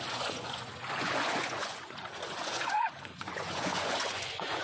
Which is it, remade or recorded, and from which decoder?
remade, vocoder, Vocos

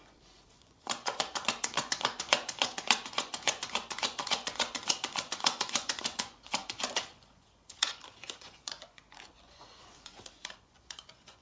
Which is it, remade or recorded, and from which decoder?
remade, vocoder, Vocos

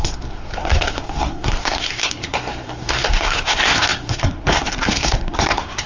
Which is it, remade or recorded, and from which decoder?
remade, codec, SNAC